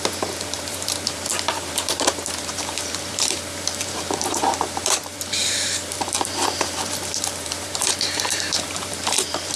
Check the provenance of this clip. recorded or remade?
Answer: remade